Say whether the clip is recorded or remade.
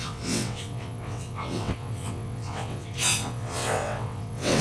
remade